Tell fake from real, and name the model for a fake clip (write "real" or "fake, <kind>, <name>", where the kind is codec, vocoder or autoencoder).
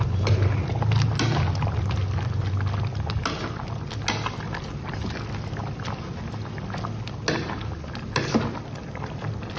real